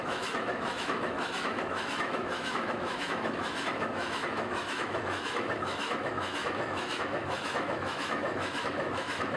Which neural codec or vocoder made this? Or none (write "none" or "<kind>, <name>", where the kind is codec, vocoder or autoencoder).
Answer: autoencoder, DAC-VAE